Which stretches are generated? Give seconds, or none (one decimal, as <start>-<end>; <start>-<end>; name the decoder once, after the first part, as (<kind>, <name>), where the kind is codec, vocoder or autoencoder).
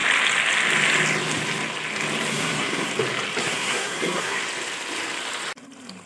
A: 2.3-2.9 (codec, SNAC); 3.4-4.4